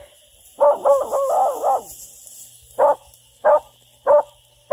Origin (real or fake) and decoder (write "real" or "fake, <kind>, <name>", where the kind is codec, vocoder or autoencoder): real